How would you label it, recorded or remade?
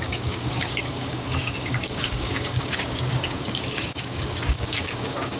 remade